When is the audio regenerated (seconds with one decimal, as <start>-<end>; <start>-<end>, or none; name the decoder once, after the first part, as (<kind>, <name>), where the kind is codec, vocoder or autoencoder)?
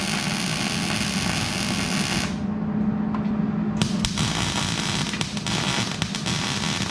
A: none